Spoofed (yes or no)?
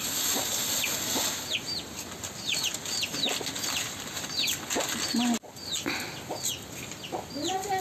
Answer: no